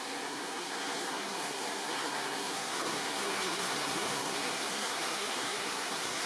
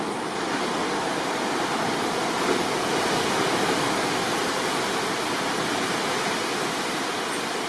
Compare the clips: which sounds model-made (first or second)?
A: first